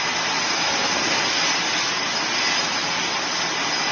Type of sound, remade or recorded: recorded